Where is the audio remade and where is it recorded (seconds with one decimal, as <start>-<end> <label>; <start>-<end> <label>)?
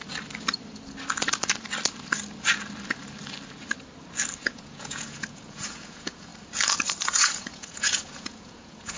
0.0-4.4 recorded; 4.4-6.3 remade; 6.3-7.0 recorded; 7.0-9.0 remade